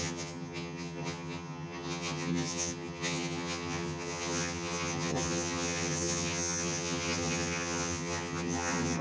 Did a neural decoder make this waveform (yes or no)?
yes